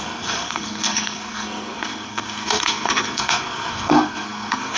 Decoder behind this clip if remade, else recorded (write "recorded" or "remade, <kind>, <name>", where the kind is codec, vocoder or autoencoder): remade, codec, SNAC